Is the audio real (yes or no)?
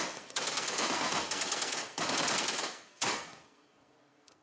no